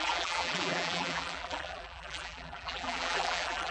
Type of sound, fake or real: fake